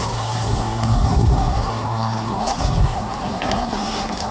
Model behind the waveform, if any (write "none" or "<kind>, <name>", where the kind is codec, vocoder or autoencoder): codec, SNAC